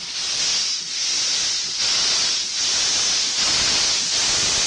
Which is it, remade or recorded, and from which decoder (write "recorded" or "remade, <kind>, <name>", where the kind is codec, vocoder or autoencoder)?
recorded